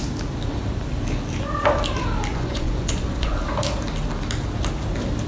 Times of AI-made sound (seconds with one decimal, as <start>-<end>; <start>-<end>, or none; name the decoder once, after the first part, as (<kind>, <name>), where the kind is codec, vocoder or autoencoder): 2.3-3.3 (vocoder, Vocos)